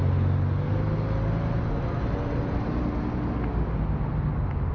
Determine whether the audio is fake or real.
real